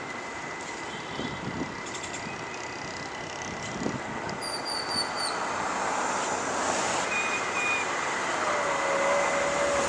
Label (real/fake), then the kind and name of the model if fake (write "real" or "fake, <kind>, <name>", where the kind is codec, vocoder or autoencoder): real